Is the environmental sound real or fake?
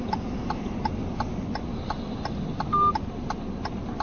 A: real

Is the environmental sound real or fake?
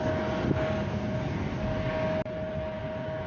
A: real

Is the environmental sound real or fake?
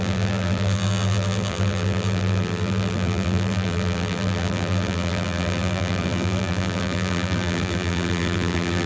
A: fake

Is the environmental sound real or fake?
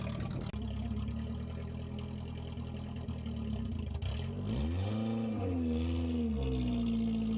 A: real